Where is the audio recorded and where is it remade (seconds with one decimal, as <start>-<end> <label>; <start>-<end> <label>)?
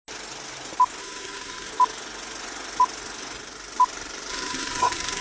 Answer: 0.0-1.0 recorded; 1.0-1.7 remade; 1.7-4.3 recorded; 4.3-5.2 remade